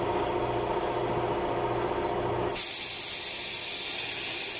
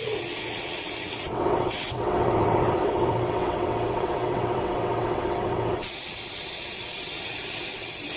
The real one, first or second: first